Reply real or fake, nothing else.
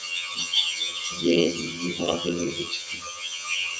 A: fake